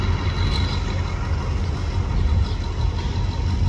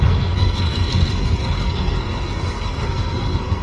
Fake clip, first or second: second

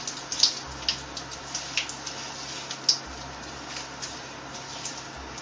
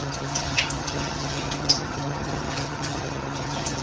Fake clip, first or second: second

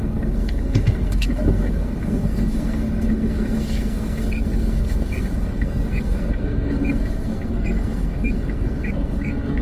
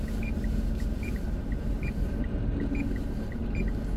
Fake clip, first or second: first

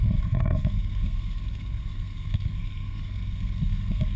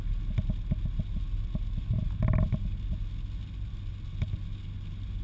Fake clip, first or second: first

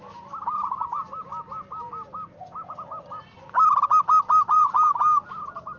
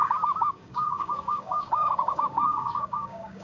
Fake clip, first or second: second